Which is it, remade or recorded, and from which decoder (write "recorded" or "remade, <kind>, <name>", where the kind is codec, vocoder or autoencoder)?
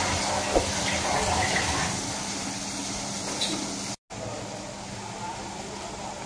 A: recorded